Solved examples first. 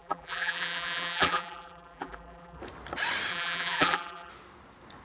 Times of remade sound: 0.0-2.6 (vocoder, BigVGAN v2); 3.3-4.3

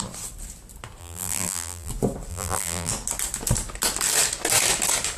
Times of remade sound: 1.0-1.9 (vocoder, BigVGAN v2); 2.3-2.9

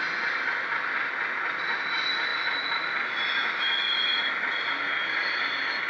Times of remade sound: none